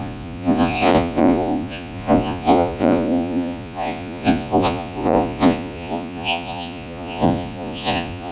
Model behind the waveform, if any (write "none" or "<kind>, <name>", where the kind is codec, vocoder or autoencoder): vocoder, Vocos